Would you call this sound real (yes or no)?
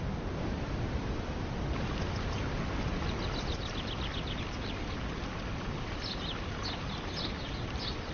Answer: yes